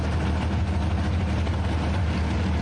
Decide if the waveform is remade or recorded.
recorded